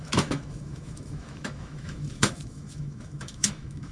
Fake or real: fake